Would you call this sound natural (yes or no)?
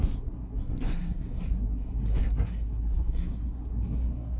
no